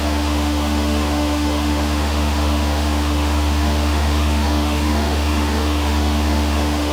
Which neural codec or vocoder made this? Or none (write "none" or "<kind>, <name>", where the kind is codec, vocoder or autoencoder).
autoencoder, DAC-VAE